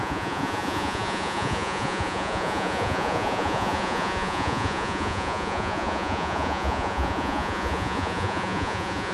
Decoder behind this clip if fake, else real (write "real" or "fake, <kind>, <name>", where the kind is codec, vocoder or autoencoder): fake, vocoder, Vocos